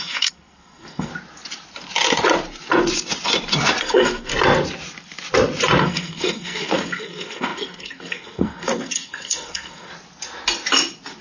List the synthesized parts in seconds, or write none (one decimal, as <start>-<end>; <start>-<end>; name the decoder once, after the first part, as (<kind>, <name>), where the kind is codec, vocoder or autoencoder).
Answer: 0.0-1.1 (codec, SNAC); 3.8-4.3; 5.8-9.9